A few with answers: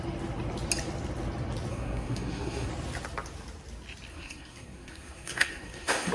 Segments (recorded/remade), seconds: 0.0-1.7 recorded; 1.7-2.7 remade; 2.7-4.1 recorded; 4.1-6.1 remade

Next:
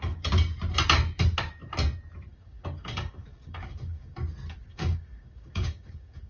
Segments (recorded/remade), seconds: 0.0-2.3 recorded; 2.3-4.2 remade; 4.2-4.7 recorded; 4.7-6.3 remade

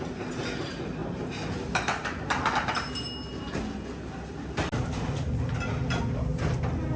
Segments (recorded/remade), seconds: 0.0-7.0 recorded